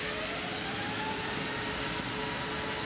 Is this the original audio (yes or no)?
yes